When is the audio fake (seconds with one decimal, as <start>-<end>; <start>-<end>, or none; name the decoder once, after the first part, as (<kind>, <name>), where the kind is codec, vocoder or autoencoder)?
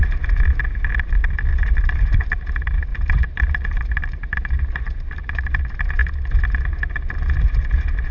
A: 1.5-2.0 (vocoder, BigVGAN v2); 2.9-5.6